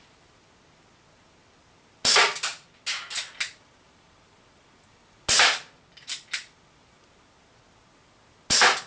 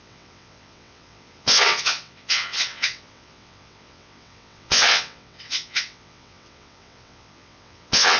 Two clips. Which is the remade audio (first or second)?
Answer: second